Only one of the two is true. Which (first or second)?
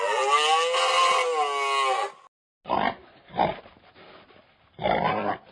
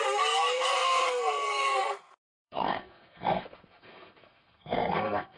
first